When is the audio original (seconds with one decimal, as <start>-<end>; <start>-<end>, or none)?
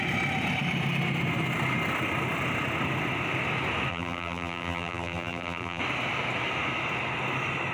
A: 0.0-3.9; 5.8-7.7